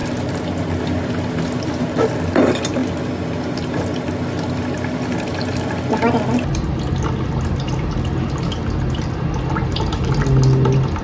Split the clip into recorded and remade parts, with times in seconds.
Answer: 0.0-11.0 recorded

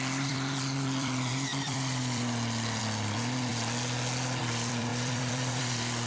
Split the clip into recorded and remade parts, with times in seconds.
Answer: 0.0-3.5 remade; 3.5-4.4 recorded; 4.4-6.1 remade

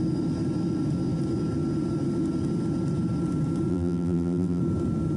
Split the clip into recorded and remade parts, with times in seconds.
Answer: 0.0-3.7 recorded; 3.7-4.6 remade; 4.6-5.2 recorded

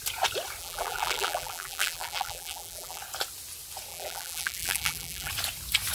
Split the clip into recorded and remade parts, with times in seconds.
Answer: 0.0-0.6 recorded; 0.6-3.0 remade; 3.0-3.9 recorded; 3.9-5.3 remade; 5.3-5.9 recorded